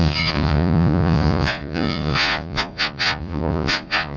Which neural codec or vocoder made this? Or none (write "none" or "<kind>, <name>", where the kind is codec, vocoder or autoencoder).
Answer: vocoder, Vocos